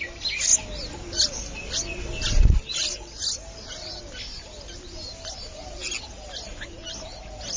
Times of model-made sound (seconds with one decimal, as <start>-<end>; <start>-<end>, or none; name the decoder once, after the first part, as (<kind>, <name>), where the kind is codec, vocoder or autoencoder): none